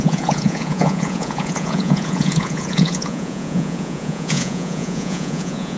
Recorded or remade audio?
remade